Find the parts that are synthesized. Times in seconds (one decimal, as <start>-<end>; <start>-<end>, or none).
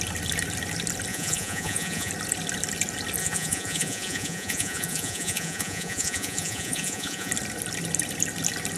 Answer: 1.1-2.1; 3.2-7.3